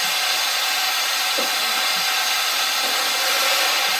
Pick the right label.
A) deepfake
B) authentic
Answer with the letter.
B